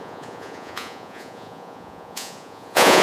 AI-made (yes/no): yes